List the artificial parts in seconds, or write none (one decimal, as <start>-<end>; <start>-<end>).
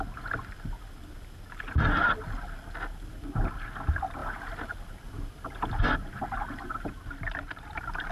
none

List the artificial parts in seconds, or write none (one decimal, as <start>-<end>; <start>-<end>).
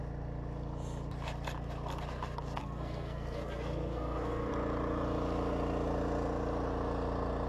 2.6-4.5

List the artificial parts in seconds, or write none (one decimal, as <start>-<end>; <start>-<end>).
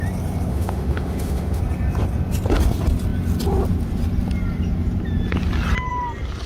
0.5-1.6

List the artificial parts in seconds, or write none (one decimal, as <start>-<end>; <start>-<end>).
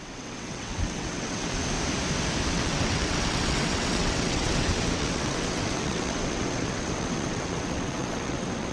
0.0-1.6; 2.5-8.7